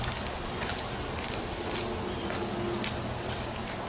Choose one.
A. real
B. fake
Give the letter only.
A